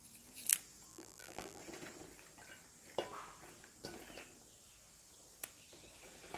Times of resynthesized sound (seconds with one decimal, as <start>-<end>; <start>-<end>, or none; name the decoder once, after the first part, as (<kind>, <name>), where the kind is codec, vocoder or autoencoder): 0.9-1.6 (vocoder, BigVGAN v2)